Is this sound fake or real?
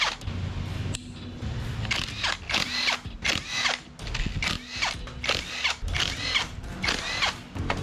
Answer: real